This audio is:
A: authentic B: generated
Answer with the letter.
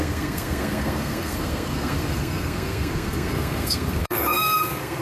B